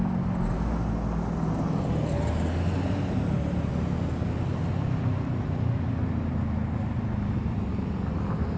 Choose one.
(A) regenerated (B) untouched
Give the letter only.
B